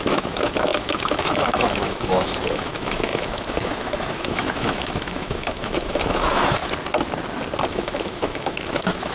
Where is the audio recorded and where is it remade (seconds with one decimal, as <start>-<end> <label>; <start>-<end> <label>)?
0.0-6.6 remade; 6.6-7.7 recorded; 7.7-9.1 remade